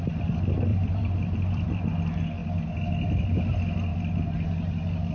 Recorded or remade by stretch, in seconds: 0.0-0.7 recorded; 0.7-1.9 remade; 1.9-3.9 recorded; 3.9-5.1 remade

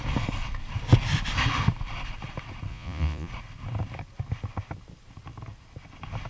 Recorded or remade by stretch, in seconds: 0.0-2.7 recorded; 2.7-3.3 remade; 3.3-6.3 recorded

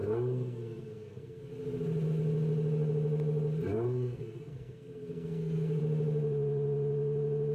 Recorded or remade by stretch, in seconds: 0.0-1.5 remade; 1.5-3.7 recorded; 3.7-5.8 remade; 5.8-7.5 recorded

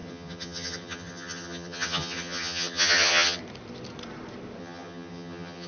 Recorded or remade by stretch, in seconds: 0.0-3.4 remade; 3.4-4.6 recorded; 4.6-5.7 remade

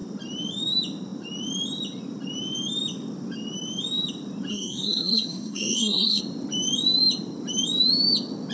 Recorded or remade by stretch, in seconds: 0.0-4.5 recorded; 4.5-6.2 remade; 6.2-8.5 recorded

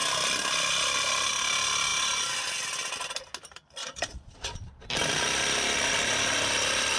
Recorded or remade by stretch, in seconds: 0.0-3.8 recorded; 3.8-4.9 remade; 4.9-7.0 recorded

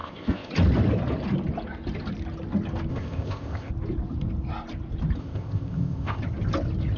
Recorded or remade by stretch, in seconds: 0.0-0.5 remade; 0.5-2.9 recorded; 2.9-3.7 remade; 3.7-5.2 recorded; 5.2-6.2 remade; 6.2-7.0 recorded